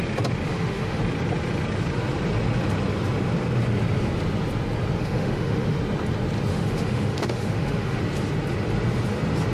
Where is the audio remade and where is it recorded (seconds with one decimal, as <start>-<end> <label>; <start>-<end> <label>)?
0.0-0.5 recorded; 0.5-1.0 remade; 1.0-5.0 recorded; 5.0-5.8 remade; 5.8-6.5 recorded; 6.5-8.0 remade; 8.0-9.5 recorded